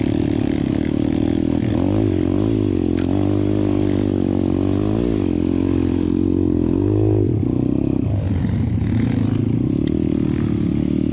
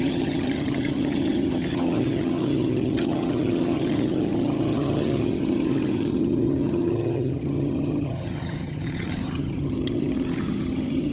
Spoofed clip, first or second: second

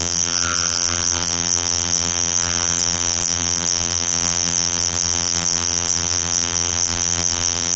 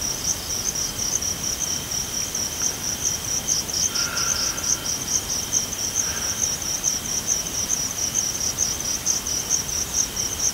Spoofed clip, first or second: first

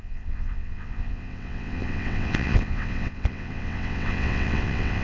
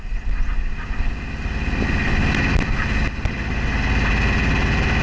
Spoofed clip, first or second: first